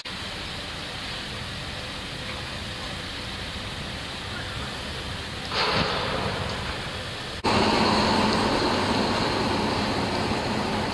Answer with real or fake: real